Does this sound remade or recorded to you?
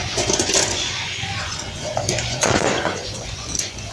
remade